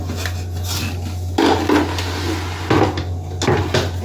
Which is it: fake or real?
real